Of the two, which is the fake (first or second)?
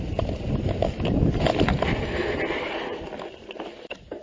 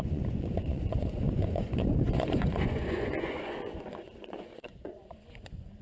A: second